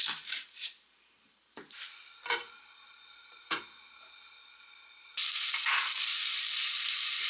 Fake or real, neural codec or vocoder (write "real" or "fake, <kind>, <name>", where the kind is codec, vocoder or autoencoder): fake, vocoder, BigVGAN v2